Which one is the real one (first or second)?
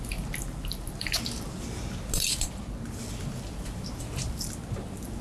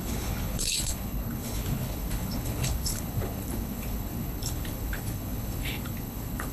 first